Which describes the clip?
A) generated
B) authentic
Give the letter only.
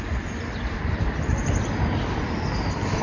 B